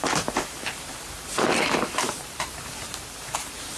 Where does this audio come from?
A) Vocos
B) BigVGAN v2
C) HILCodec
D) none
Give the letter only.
B